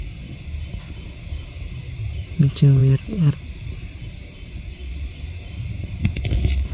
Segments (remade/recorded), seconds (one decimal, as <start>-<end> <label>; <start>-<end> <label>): 0.0-2.8 recorded; 2.8-5.4 remade; 5.4-6.7 recorded